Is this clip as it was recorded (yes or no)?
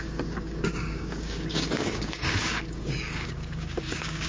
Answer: no